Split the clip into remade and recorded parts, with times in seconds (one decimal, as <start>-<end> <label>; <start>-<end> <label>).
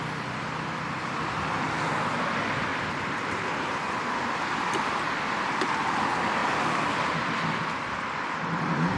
0.0-2.7 recorded; 2.7-4.5 remade; 4.5-9.0 recorded